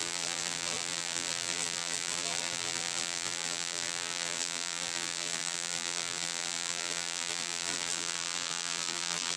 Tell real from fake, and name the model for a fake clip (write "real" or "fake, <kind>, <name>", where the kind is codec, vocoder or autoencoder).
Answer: fake, vocoder, BigVGAN v2